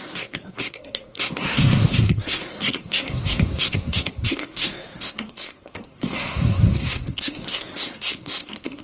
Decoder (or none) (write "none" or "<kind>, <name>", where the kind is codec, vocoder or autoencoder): codec, SNAC